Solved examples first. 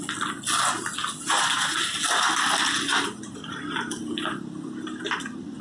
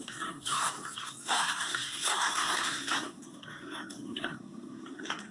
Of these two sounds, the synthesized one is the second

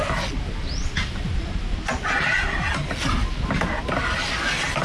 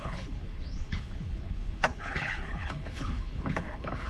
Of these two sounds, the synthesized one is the second